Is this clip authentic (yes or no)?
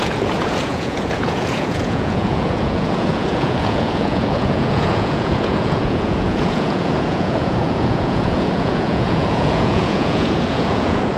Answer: no